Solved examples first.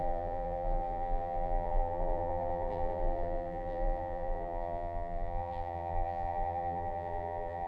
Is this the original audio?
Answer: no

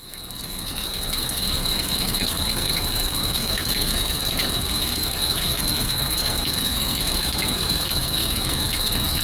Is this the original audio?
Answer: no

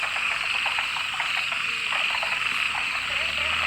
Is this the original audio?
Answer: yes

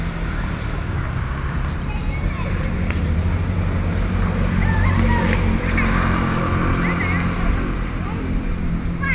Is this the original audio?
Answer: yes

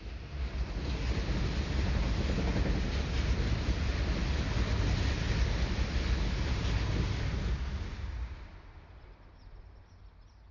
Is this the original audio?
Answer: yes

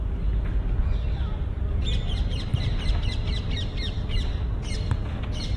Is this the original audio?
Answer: yes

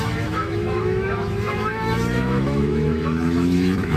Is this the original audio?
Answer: no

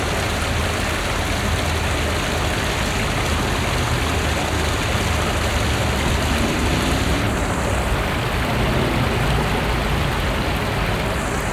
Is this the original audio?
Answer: yes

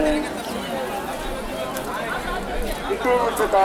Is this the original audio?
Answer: yes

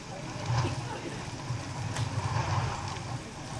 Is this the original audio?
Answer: yes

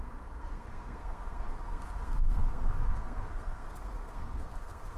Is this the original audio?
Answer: no